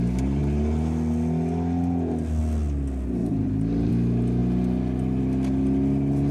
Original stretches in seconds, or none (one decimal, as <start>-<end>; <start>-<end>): 0.0-3.2; 3.9-6.3